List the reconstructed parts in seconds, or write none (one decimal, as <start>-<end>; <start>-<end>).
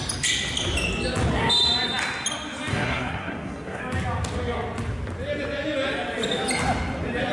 2.7-3.8